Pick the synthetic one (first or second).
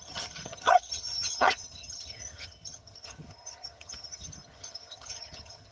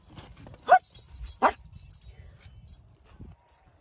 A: first